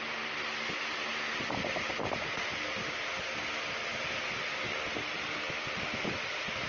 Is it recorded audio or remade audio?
recorded